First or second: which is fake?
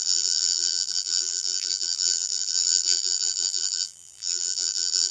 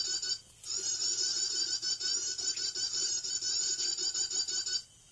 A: first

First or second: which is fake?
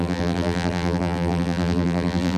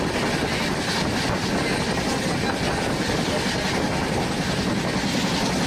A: first